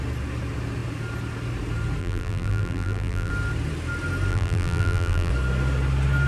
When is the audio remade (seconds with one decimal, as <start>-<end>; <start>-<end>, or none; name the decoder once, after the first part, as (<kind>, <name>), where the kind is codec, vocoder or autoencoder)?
2.0-3.3 (vocoder, BigVGAN v2); 4.3-5.3